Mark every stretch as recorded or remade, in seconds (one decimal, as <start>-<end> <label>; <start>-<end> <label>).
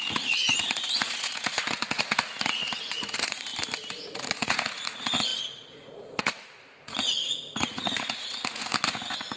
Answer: 0.0-3.5 remade; 3.5-4.0 recorded; 4.0-9.4 remade